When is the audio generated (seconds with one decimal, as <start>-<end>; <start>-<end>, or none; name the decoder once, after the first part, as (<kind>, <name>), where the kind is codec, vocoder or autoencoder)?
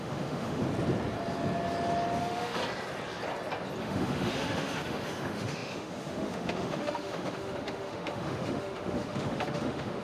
0.0-0.6 (autoencoder, DAC-VAE); 2.2-2.6; 3.8-10.0